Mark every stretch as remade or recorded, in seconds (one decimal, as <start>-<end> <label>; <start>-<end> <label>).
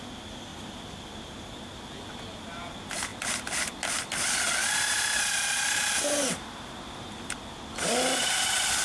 0.0-4.6 recorded; 4.6-7.3 remade; 7.3-8.8 recorded